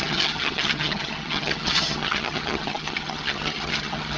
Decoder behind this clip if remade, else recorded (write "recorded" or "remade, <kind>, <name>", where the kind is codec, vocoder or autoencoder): remade, vocoder, HiFi-GAN